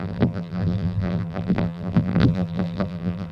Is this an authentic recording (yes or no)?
no